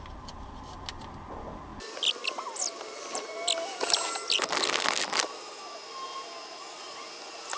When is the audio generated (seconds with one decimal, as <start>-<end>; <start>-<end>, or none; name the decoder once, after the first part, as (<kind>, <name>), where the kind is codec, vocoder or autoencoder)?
none